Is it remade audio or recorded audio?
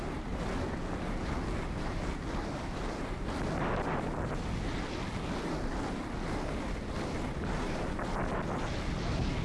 recorded